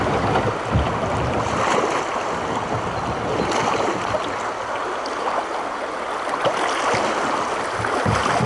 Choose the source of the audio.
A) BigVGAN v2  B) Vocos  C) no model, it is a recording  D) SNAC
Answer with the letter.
C